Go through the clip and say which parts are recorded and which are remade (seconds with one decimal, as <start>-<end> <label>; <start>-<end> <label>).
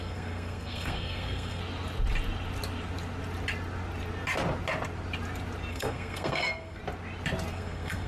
0.0-1.6 remade; 1.6-5.7 recorded; 5.7-6.8 remade; 6.8-7.5 recorded; 7.5-8.1 remade